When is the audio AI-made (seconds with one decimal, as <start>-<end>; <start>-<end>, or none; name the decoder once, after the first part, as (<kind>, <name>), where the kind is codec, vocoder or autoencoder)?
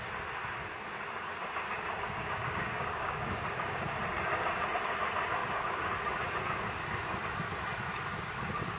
2.2-3.8 (codec, DAC); 5.4-5.9